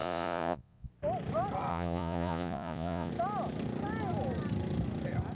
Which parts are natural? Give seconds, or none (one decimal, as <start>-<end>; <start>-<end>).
0.9-1.7; 3.1-5.3